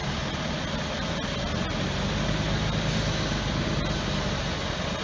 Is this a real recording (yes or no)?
yes